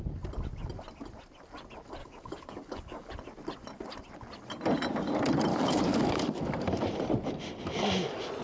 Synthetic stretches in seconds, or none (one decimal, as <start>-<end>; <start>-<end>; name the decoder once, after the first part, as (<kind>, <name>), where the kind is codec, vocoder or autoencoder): 2.0-3.1 (codec, DAC); 5.5-6.4